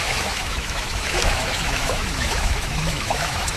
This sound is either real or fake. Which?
fake